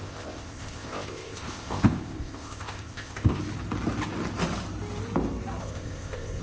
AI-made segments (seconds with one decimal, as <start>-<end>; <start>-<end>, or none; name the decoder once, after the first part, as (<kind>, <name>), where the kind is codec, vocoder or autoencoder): 0.0-3.4 (codec, ZipCodec); 5.6-6.4